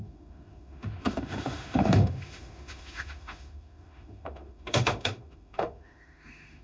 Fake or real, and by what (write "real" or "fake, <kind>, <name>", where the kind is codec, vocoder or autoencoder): fake, autoencoder, DAC-VAE